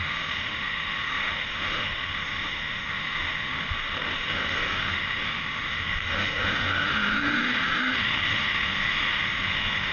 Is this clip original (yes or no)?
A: no